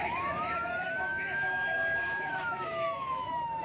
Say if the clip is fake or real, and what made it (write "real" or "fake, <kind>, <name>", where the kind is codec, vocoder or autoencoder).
fake, autoencoder, DAC-VAE